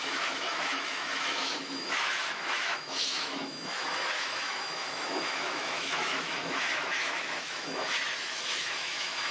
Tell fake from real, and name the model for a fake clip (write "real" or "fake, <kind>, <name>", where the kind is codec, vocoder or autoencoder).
fake, autoencoder, DAC-VAE